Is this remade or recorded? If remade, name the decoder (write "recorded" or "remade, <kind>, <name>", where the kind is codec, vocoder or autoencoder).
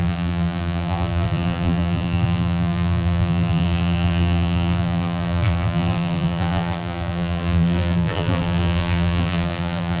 remade, vocoder, BigVGAN v2